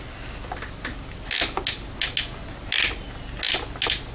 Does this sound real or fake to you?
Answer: real